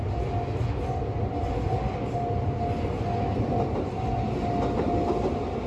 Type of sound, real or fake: real